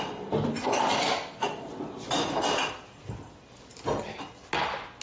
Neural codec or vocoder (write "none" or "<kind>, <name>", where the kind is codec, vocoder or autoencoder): none